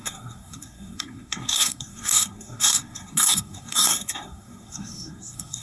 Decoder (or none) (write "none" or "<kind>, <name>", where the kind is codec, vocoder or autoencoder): codec, SNAC